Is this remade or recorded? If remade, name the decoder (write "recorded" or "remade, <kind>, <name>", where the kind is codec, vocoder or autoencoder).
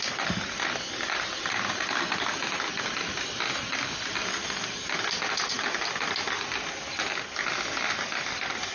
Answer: recorded